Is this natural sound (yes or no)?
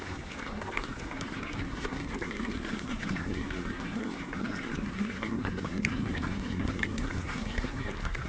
no